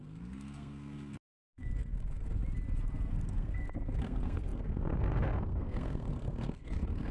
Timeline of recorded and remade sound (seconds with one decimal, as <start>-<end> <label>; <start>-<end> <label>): 0.0-2.4 remade; 2.4-3.1 recorded; 3.1-7.1 remade